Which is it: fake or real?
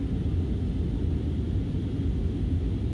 real